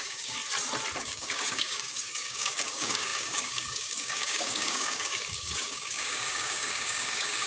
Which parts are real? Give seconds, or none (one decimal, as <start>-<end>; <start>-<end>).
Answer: 0.4-1.0